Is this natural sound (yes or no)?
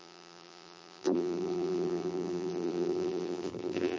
no